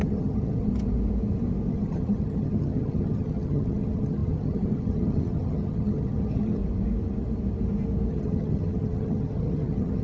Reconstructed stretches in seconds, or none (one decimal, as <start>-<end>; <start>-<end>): 0.0-0.7; 1.7-6.6; 8.1-10.0